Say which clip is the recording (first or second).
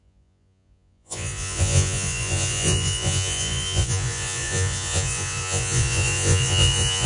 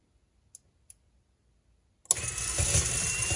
second